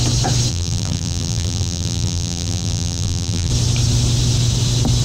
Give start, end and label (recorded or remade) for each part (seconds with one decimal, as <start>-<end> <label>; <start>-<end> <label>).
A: 0.0-0.5 recorded; 0.5-3.5 remade; 3.5-5.0 recorded